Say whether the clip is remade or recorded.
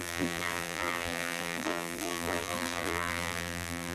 remade